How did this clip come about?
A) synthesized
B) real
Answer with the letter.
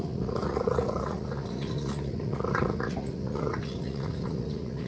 A